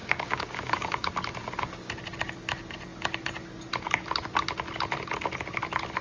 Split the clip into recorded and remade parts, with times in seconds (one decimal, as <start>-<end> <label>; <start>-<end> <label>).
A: 0.0-1.1 remade; 1.1-6.0 recorded